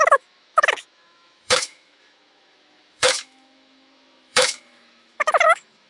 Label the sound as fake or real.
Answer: fake